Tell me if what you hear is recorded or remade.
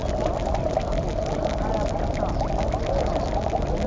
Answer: recorded